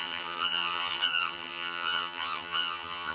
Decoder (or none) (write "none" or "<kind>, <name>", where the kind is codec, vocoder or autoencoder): vocoder, HiFi-GAN